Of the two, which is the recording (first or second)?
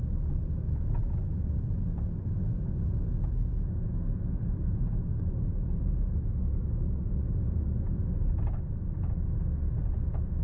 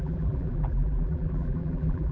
first